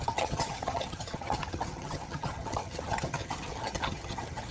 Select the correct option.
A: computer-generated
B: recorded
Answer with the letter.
A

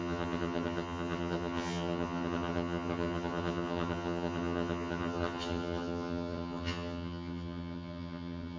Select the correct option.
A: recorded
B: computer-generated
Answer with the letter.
B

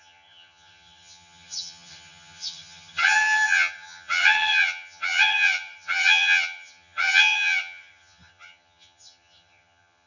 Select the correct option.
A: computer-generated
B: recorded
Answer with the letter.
A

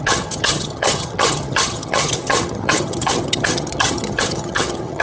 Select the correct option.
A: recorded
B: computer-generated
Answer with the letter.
B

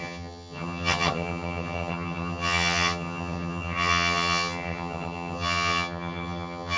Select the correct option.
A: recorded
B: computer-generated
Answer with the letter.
B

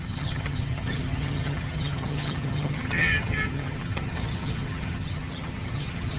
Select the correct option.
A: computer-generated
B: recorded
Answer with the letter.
A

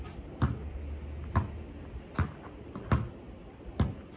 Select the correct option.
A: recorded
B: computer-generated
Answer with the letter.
A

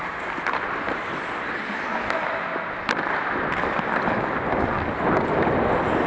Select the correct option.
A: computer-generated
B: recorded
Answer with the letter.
B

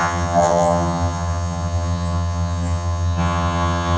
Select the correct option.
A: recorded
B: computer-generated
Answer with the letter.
B